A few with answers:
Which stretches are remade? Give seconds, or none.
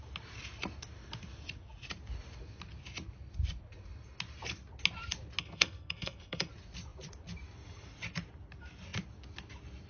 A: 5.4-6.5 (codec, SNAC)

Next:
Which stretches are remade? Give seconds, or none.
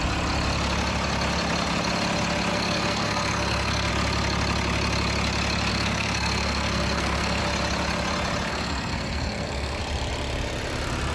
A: 2.5-3.9 (codec, SNAC); 5.7-7.4; 8.5-9.8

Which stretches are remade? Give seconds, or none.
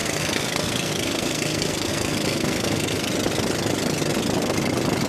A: 0.0-3.1 (codec, SNAC)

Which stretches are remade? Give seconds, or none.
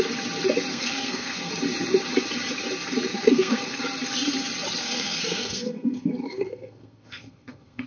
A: 0.7-1.5 (codec, SNAC); 3.1-3.8; 4.8-7.9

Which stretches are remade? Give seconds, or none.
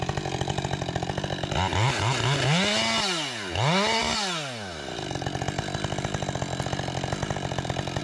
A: none